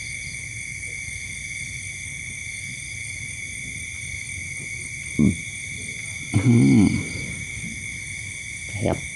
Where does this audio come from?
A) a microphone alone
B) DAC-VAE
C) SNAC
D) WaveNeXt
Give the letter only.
A